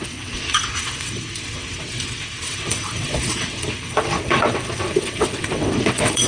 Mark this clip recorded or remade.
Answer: remade